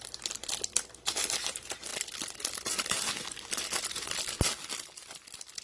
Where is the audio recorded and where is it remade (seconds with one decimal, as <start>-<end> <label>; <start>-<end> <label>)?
0.0-5.6 recorded